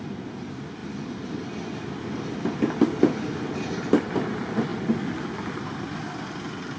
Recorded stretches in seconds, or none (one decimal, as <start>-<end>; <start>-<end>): 0.0-6.8